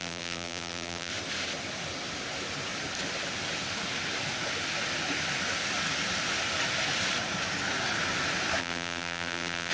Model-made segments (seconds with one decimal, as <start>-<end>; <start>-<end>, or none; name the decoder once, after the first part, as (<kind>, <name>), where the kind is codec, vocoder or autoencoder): 0.0-1.1 (vocoder, BigVGAN v2); 8.6-9.7